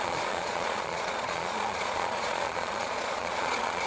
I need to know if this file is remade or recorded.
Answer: remade